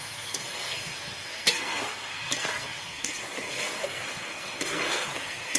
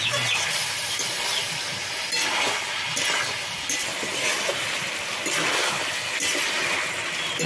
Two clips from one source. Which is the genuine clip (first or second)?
second